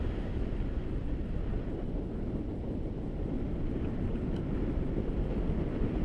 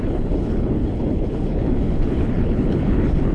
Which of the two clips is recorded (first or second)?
first